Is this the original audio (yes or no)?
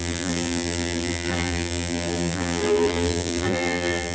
no